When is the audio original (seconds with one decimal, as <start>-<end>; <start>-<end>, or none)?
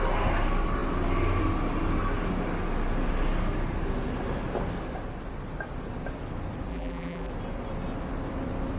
0.0-6.7; 7.3-8.8